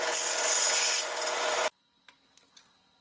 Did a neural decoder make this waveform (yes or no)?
no